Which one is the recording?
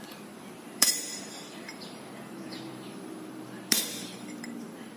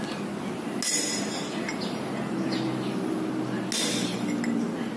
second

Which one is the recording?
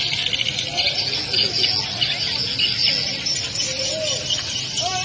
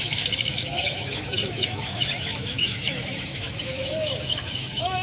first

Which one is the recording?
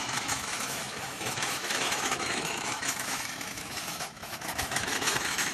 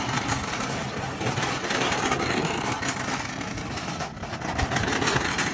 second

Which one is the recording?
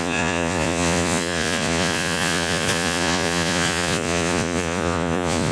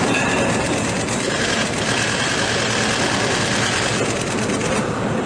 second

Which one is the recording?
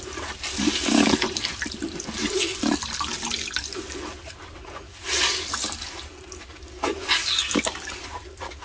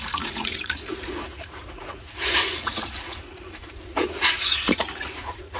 first